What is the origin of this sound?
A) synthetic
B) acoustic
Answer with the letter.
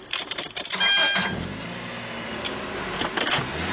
B